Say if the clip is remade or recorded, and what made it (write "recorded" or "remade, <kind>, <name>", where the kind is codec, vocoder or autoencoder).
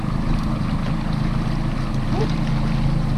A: recorded